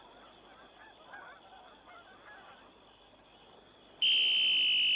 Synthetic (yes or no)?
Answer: no